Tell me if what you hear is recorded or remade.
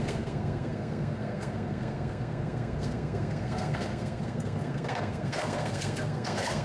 remade